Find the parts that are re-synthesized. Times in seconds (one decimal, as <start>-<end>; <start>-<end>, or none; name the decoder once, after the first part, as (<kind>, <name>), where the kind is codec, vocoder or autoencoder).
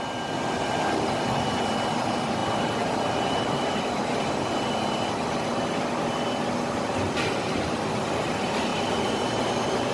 2.4-5.1 (vocoder, BigVGAN v2); 8.7-9.4